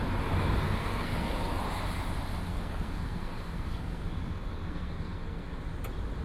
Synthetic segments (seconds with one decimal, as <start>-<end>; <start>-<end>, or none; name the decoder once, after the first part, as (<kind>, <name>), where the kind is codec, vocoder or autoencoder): 0.8-1.6 (codec, SNAC); 2.5-5.6